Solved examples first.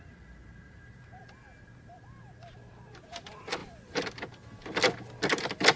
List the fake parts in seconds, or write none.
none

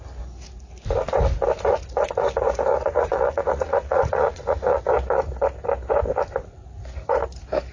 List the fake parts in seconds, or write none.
2.7-4.8 (vocoder, Vocos)

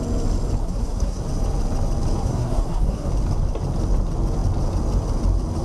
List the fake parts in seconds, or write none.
0.6-1.2 (codec, SNAC); 2.2-3.1

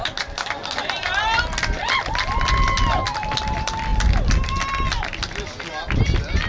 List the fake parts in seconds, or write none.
none

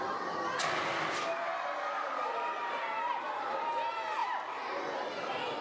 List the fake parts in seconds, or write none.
none

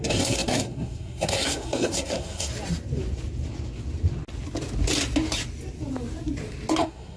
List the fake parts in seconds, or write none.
0.0-2.5 (codec, SNAC); 6.8-7.2

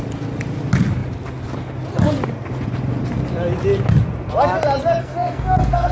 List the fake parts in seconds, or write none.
5.0-5.9 (codec, SNAC)

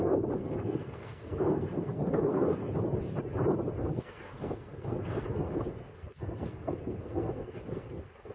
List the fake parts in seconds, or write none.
0.0-2.6 (codec, SNAC); 3.8-8.3